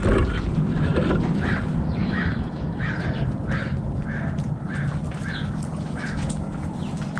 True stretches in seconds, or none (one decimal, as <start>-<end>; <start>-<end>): 0.0-2.0; 2.9-7.2